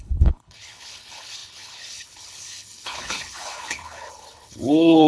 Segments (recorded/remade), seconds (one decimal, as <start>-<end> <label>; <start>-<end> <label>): 0.0-5.1 remade